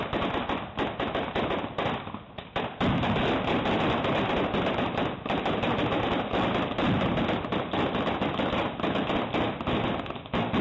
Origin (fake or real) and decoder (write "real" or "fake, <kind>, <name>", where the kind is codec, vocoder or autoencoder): real